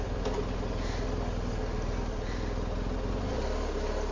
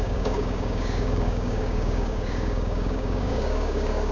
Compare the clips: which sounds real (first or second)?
first